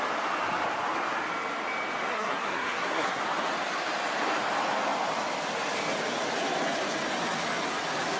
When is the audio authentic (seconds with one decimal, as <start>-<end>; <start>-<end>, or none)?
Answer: 0.0-2.1; 3.2-8.2